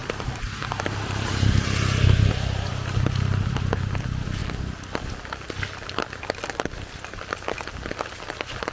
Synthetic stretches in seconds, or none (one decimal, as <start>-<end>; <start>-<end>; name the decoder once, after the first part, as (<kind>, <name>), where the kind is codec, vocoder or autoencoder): 0.0-2.3 (vocoder, BigVGAN v2); 4.4-5.1